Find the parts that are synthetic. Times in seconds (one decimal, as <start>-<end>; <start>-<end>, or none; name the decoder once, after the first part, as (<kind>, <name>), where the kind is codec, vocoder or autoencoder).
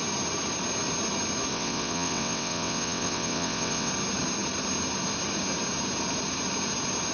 1.5-3.9 (vocoder, WaveNeXt)